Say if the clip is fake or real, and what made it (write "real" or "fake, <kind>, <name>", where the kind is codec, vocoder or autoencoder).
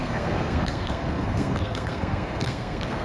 fake, codec, SNAC